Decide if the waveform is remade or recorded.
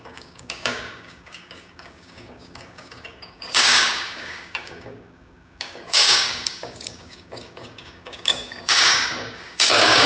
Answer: remade